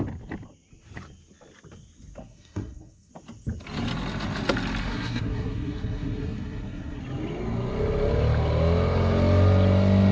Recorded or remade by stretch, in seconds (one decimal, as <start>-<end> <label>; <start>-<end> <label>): 0.0-2.2 recorded; 2.2-3.1 remade; 3.1-4.8 recorded; 4.8-7.0 remade; 7.0-10.1 recorded